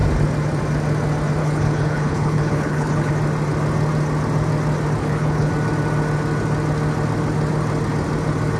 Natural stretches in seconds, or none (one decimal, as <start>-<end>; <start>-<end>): 0.0-1.4; 3.1-5.0; 5.5-8.6